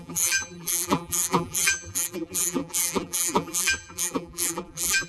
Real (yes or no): no